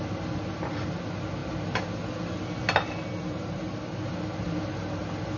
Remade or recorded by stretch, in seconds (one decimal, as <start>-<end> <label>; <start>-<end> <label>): 0.0-5.4 recorded